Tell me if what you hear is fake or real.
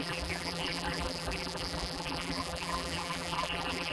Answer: fake